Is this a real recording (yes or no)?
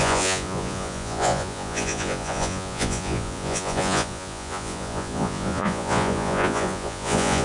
no